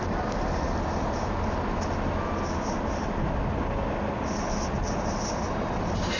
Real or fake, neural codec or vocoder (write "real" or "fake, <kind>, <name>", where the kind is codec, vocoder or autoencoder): real